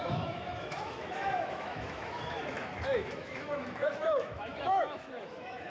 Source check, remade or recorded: remade